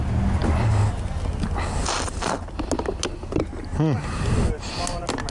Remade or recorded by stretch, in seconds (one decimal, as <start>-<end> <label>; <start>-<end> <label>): 0.0-5.3 recorded